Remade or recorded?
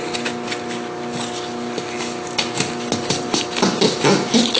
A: recorded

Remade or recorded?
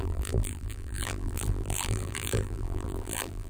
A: remade